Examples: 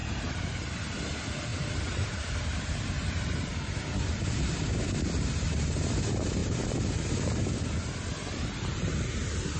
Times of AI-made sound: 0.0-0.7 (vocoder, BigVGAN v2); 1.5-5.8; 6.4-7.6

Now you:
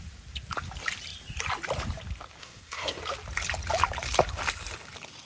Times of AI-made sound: 2.4-3.0 (codec, SNAC)

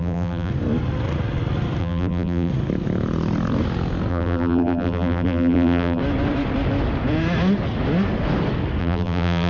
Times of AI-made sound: 0.0-0.5 (vocoder, BigVGAN v2); 1.8-2.5; 4.1-6.0; 8.8-9.5

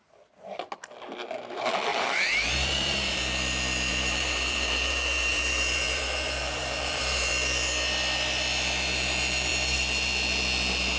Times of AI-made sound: 1.9-3.2 (vocoder, BigVGAN v2); 3.9-7.3